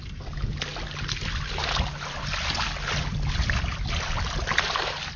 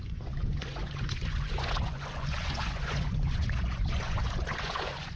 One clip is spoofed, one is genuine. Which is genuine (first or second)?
first